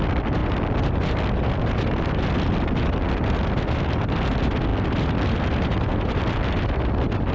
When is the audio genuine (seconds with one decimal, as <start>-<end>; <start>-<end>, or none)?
0.0-7.3